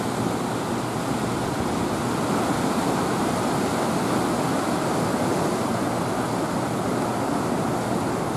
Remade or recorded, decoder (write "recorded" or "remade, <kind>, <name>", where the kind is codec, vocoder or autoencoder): recorded